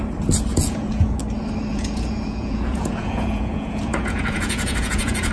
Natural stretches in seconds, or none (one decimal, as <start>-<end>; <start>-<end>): 0.0-0.5; 1.2-1.7